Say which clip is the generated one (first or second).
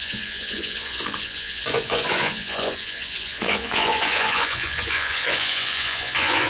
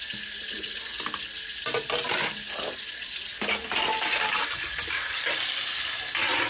first